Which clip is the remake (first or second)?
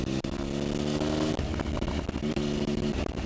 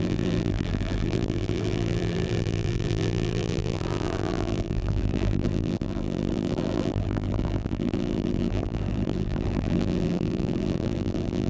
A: second